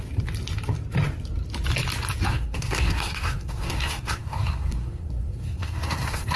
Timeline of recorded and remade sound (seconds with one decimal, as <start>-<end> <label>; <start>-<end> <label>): 0.0-2.3 recorded; 2.3-6.4 remade